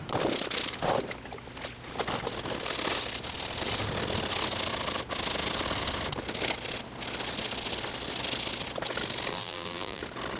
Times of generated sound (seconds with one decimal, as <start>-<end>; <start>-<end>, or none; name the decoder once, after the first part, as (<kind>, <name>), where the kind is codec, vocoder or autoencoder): 9.3-10.0 (vocoder, BigVGAN v2)